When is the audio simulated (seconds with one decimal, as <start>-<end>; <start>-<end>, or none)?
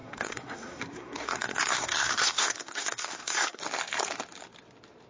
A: 0.0-3.6